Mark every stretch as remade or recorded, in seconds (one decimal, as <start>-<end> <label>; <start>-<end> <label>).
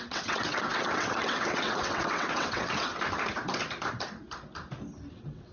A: 0.0-2.9 remade; 2.9-5.1 recorded; 5.1-5.5 remade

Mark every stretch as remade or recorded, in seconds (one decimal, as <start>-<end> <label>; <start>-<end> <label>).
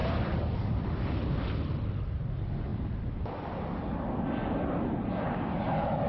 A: 0.0-6.1 recorded